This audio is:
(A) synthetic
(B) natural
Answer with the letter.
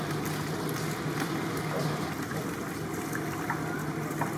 B